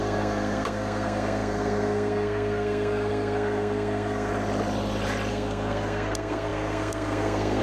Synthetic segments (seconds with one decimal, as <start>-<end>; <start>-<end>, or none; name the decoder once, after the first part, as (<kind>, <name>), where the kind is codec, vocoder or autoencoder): 0.0-4.3 (codec, SNAC); 5.3-7.6